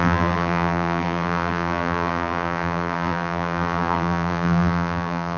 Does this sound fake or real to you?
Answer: fake